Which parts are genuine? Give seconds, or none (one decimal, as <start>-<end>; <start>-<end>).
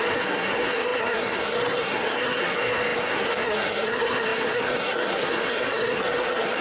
none